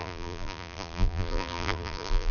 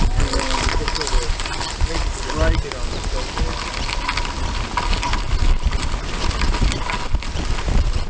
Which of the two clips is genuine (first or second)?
second